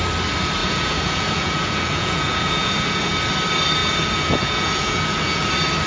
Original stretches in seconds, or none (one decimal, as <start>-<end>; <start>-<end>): 0.0-0.6; 3.1-3.8; 5.5-5.9